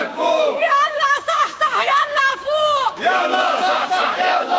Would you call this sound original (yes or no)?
no